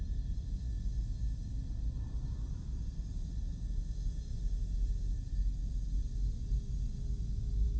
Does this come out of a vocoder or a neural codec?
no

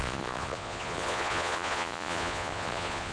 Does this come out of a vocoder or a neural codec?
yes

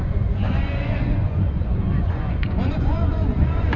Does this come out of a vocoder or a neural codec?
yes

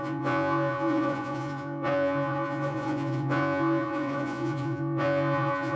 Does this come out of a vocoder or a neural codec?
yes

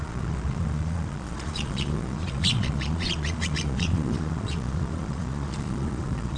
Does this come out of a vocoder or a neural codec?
yes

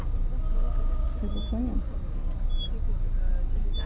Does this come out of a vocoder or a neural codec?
no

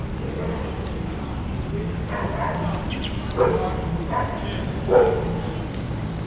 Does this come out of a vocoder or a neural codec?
no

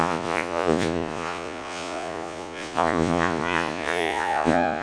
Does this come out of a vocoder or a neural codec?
yes